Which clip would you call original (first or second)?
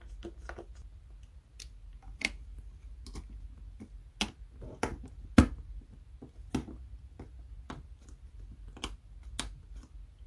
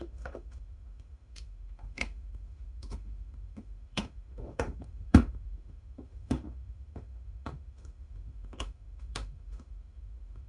first